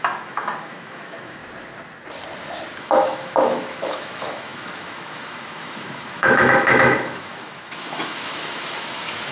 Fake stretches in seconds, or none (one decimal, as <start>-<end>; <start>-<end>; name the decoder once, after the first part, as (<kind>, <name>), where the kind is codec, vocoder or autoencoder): 0.0-1.4 (autoencoder, DAC-VAE); 2.8-9.3